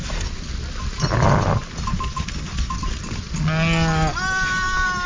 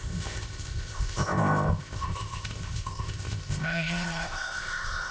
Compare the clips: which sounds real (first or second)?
first